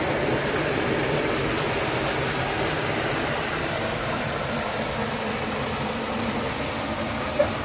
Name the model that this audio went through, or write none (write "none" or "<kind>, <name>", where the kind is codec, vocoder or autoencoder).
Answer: none